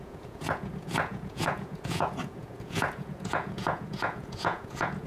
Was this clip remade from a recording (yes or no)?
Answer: yes